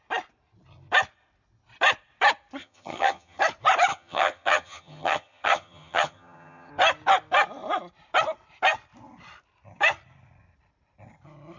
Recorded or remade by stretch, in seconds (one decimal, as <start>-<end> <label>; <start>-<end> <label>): 0.0-2.6 recorded; 2.6-3.4 remade; 3.4-3.9 recorded; 3.9-6.7 remade; 6.7-11.6 recorded